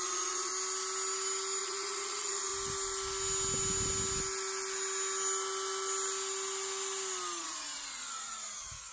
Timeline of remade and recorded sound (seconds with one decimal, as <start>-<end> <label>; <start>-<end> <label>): 0.0-0.5 remade; 0.5-1.6 recorded; 1.6-2.5 remade; 2.5-7.4 recorded; 7.4-8.9 remade